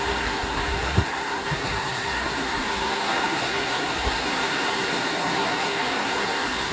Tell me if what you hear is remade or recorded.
remade